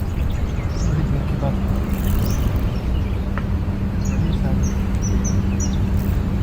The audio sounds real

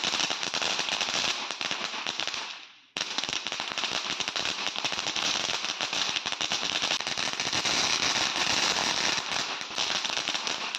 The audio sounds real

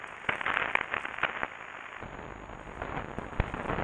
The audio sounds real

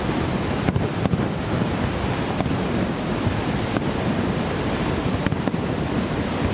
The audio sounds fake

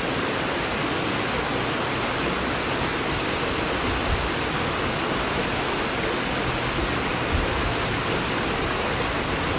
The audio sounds real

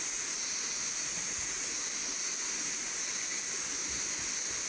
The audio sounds real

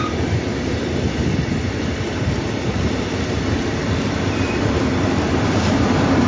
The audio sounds fake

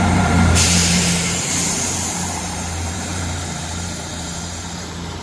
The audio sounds fake